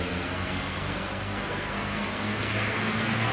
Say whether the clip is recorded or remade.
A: remade